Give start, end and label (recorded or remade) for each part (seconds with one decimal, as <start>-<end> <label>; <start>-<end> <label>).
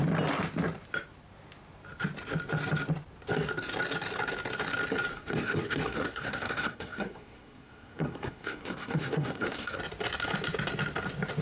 0.0-5.1 recorded; 5.1-9.8 remade; 9.8-11.4 recorded